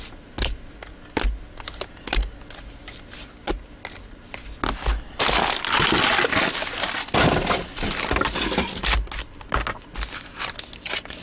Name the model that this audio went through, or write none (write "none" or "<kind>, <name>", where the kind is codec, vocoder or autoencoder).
none